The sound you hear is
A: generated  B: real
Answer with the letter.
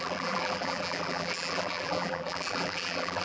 A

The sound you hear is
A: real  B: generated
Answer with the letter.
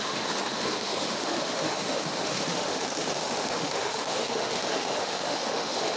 B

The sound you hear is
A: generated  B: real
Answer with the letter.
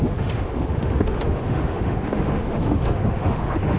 A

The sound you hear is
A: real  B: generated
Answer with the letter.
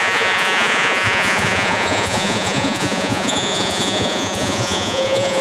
B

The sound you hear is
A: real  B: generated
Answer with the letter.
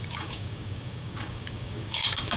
B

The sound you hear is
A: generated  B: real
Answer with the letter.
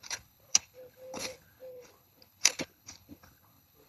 A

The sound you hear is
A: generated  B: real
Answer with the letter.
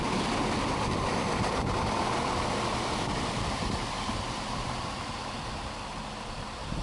A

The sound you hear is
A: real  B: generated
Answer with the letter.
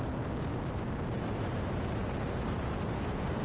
B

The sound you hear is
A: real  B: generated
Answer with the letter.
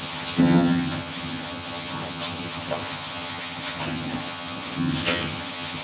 B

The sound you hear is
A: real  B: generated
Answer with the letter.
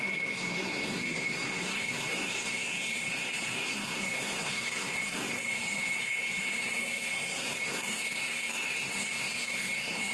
B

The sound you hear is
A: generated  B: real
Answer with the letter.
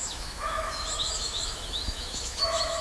A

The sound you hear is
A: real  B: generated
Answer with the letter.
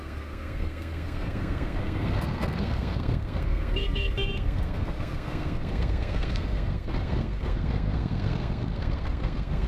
B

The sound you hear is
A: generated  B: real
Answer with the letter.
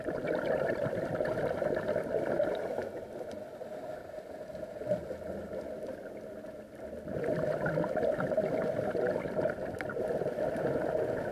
B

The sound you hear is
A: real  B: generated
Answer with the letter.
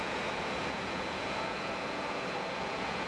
B